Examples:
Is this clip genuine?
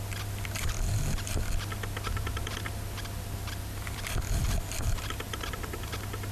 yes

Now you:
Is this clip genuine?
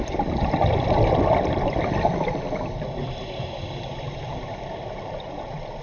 no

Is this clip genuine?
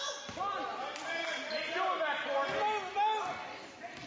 yes